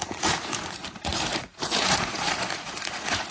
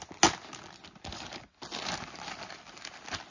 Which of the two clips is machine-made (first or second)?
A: first